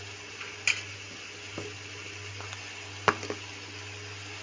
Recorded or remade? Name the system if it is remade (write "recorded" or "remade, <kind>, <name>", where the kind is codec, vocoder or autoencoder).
recorded